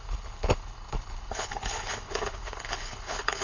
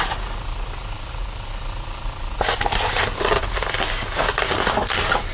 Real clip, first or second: second